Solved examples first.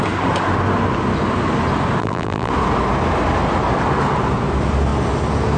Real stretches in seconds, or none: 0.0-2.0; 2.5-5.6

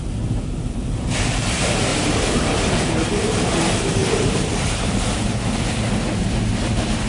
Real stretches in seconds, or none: 0.0-1.9; 2.6-4.0; 5.4-7.1

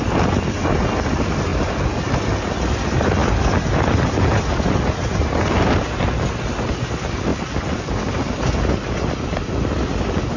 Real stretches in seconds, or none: 0.0-7.3; 8.0-10.4

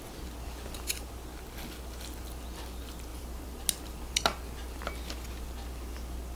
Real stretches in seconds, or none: 0.0-3.1; 3.6-6.4